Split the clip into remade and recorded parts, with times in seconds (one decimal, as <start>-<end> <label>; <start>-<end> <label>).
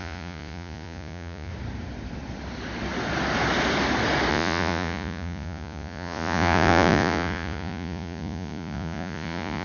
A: 0.0-1.5 remade; 1.5-4.3 recorded; 4.3-9.6 remade